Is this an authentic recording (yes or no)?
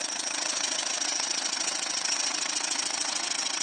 no